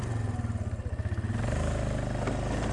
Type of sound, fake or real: real